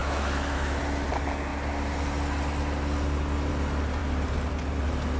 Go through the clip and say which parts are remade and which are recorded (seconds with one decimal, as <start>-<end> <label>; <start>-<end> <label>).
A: 0.0-0.8 remade; 0.8-5.2 recorded